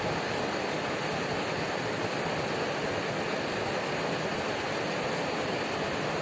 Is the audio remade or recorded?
recorded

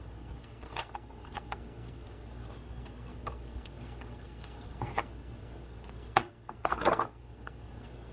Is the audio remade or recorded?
remade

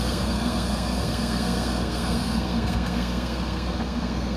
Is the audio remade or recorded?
remade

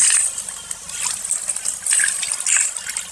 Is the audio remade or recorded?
recorded